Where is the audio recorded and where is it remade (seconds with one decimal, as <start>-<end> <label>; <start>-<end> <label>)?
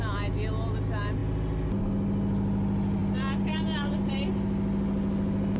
0.0-5.6 recorded